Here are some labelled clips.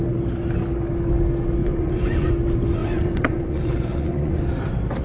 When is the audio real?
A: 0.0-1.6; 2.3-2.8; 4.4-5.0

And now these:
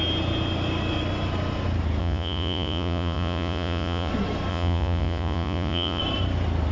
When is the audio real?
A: 0.0-2.0; 4.1-4.5; 6.0-6.7

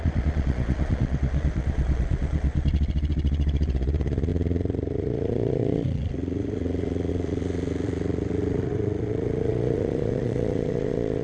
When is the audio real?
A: none

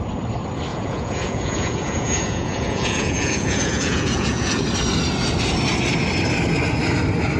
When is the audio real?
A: 0.0-0.7; 4.6-7.4

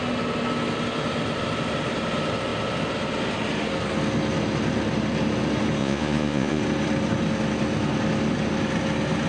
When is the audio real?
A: 0.0-5.8; 6.6-9.3

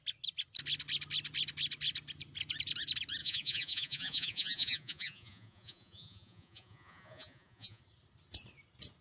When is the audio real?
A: 0.0-3.2; 7.8-9.0